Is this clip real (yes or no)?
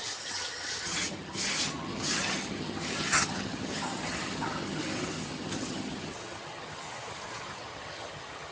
no